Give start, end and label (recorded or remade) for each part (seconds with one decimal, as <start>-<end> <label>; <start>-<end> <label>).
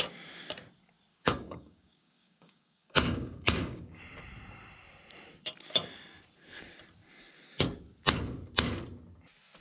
0.0-1.1 recorded; 1.1-4.0 remade; 4.0-9.6 recorded